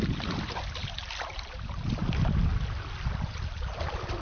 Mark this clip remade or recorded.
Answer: recorded